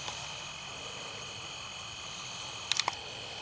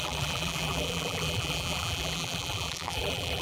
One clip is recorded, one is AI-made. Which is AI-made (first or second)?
second